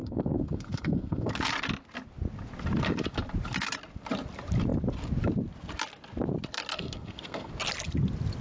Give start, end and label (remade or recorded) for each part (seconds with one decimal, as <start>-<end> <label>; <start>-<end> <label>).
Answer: 0.0-1.3 remade; 1.3-6.7 recorded; 6.7-7.5 remade; 7.5-8.4 recorded